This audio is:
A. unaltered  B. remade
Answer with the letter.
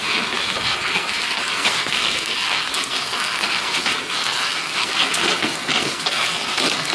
B